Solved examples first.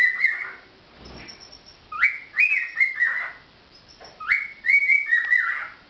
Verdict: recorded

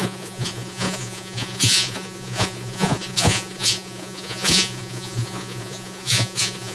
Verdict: remade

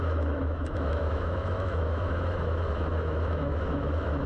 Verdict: remade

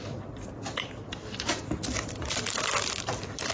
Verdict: recorded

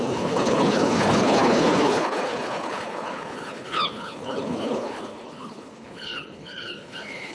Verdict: remade